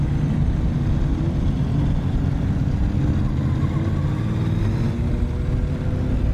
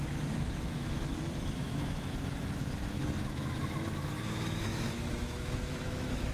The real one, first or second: first